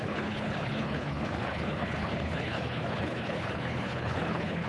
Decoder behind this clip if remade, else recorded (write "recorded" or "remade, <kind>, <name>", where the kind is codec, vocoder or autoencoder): remade, codec, HILCodec